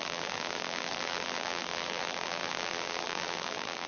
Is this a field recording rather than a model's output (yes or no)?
no